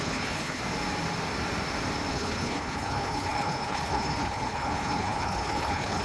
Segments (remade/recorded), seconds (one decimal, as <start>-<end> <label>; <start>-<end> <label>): 0.0-0.6 remade; 0.6-2.1 recorded; 2.1-6.0 remade